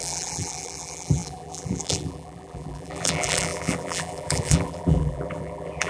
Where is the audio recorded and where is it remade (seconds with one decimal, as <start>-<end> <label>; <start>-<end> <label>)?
0.0-5.9 remade